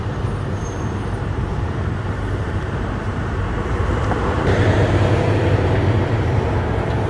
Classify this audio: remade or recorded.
remade